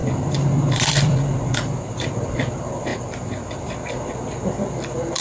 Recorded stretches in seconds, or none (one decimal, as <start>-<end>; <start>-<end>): 0.0-0.7